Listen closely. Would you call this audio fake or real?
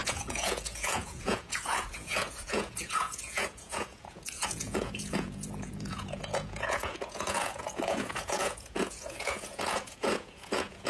fake